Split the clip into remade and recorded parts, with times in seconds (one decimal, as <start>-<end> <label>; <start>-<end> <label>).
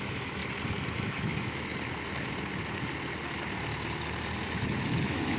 0.0-0.4 remade; 0.4-1.0 recorded; 1.0-1.7 remade; 1.7-4.5 recorded; 4.5-5.4 remade